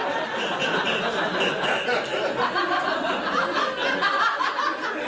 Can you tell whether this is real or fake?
real